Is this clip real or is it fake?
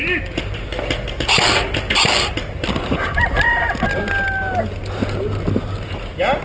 real